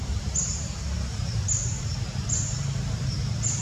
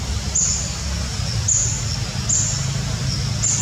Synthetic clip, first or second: first